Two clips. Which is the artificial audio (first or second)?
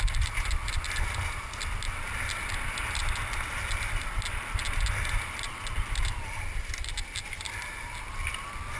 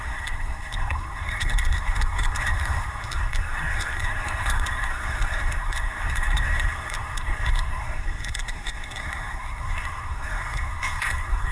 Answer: second